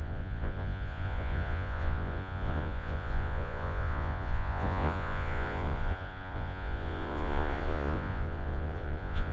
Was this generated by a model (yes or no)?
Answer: yes